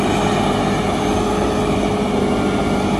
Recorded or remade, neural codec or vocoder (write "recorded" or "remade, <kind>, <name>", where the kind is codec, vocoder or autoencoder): recorded